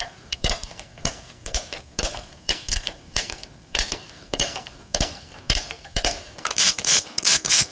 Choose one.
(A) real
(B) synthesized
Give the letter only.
B